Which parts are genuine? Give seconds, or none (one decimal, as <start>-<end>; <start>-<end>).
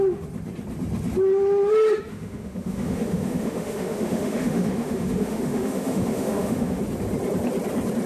0.0-2.1; 6.8-8.1